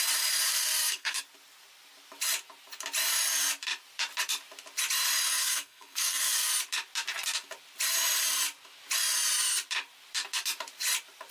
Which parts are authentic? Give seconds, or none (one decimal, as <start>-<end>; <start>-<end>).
0.0-0.5; 1.2-5.4; 6.5-11.3

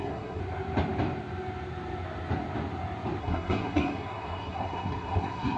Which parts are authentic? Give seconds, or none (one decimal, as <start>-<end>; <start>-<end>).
0.4-3.2

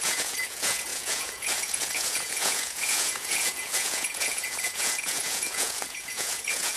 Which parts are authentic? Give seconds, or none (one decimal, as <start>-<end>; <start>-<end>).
none

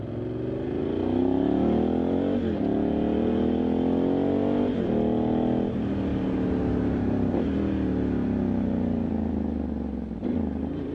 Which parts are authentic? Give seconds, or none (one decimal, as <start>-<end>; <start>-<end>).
0.0-10.9

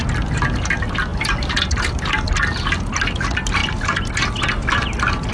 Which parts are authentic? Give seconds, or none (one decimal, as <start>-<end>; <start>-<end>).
0.0-1.1; 1.8-5.3

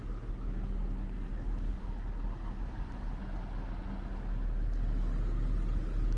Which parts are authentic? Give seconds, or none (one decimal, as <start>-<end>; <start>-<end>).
0.0-6.2